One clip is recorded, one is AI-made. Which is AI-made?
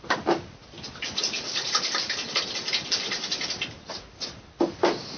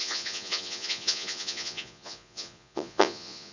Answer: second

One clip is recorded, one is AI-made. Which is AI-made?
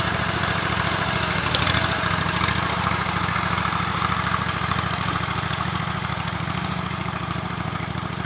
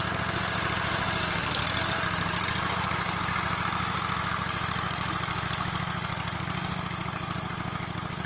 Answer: first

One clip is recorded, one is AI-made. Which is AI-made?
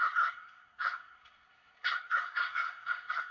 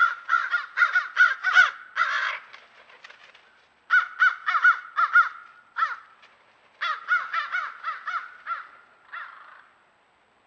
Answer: first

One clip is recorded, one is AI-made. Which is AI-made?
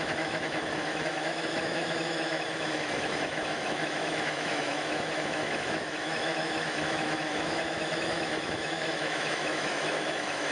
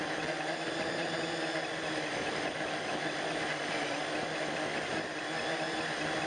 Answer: first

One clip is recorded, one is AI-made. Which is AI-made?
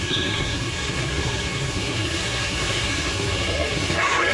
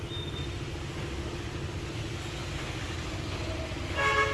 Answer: first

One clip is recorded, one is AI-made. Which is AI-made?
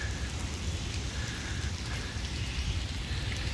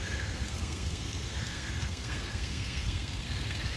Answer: second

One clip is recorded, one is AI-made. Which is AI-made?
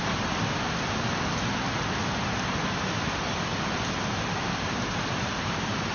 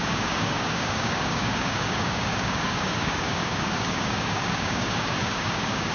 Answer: second